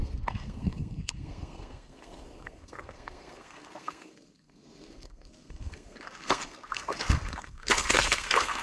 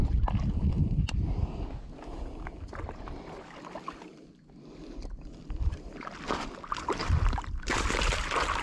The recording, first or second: second